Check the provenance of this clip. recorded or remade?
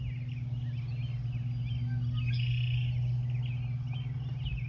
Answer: recorded